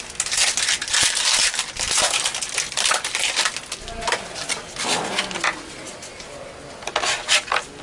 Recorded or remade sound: recorded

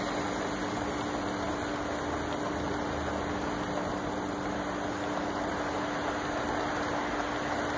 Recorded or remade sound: recorded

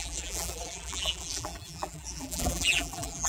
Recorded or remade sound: remade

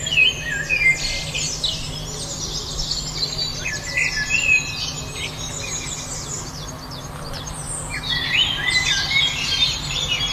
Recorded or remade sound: recorded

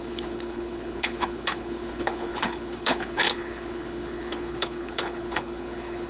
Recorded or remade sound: remade